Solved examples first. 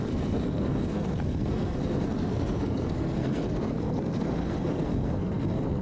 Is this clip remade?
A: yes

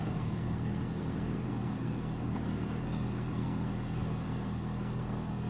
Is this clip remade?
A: yes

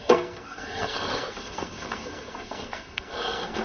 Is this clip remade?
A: yes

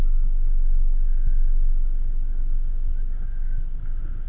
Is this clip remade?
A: no